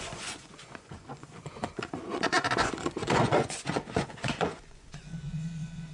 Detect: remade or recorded remade